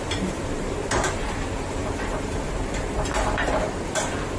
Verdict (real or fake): fake